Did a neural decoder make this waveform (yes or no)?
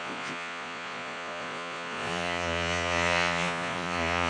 yes